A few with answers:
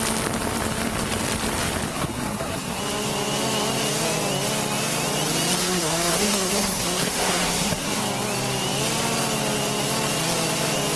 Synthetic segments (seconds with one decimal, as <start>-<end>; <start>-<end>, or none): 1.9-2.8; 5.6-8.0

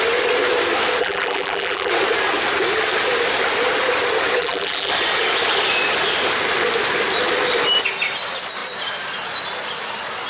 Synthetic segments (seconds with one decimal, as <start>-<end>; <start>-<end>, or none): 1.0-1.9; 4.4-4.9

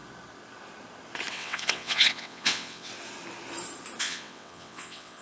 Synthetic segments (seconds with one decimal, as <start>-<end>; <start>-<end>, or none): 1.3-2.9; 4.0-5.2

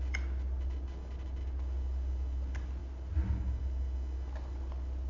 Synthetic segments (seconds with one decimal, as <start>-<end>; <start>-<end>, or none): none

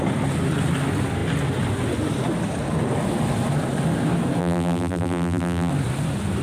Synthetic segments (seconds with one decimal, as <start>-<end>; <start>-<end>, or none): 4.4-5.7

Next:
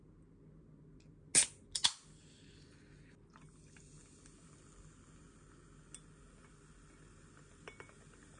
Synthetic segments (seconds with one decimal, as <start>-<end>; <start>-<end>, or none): none